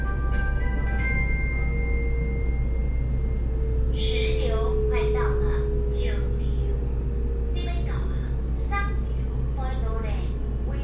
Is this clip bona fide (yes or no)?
yes